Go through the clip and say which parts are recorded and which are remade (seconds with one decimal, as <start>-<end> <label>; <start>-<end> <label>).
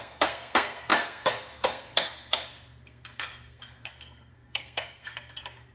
0.0-5.7 remade